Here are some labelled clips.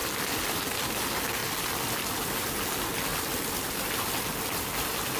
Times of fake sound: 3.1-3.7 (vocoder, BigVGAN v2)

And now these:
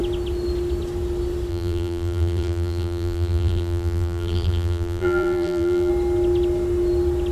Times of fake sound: 1.5-5.9 (vocoder, BigVGAN v2)

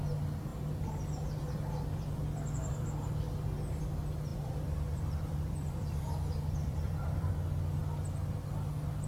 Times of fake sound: 4.3-7.3 (vocoder, BigVGAN v2)